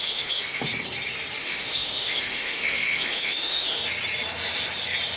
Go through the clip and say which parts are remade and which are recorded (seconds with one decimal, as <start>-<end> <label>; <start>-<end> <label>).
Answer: 0.0-0.7 remade; 0.7-1.4 recorded; 1.4-3.8 remade; 3.8-5.2 recorded